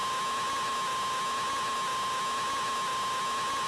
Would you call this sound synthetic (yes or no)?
no